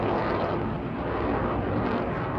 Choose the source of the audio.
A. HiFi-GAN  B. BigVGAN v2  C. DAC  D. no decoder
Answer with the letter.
D